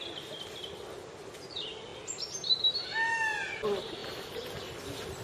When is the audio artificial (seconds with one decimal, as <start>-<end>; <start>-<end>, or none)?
none